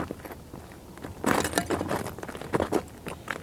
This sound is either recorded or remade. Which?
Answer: recorded